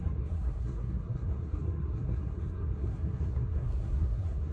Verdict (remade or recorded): remade